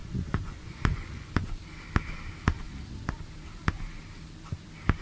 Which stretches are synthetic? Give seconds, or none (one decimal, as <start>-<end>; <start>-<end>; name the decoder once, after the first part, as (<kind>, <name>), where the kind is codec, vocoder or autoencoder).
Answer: 0.0-1.3 (vocoder, Vocos)